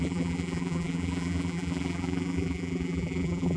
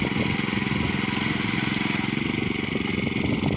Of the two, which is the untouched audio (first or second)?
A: second